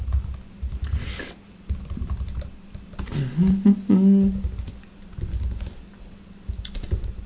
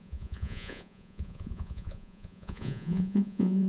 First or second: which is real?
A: first